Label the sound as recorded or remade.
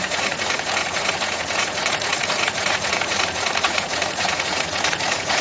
remade